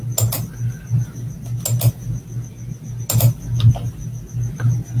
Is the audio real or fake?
real